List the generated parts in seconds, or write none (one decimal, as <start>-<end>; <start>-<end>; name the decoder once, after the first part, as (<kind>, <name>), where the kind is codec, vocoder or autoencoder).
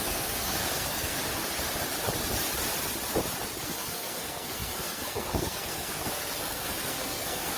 0.0-1.2 (codec, SNAC); 3.6-7.6